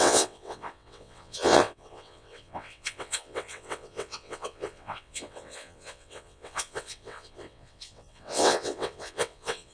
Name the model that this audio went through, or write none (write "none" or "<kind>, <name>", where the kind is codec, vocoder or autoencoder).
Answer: vocoder, WaveNeXt